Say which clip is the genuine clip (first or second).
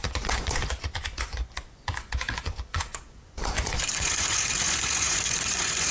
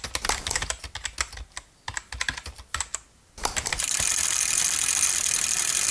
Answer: second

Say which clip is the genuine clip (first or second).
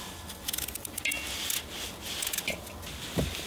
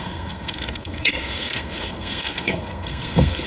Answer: first